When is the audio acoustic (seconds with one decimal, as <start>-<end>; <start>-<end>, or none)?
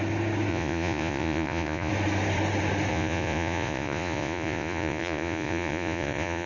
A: 0.0-0.5; 1.9-2.9